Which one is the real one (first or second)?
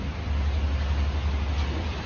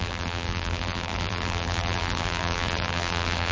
first